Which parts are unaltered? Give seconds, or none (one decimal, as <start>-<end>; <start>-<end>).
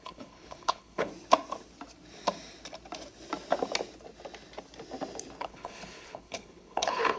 1.1-5.4